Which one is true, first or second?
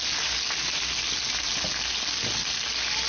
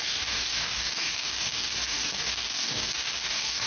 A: first